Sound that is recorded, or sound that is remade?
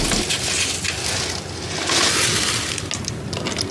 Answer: recorded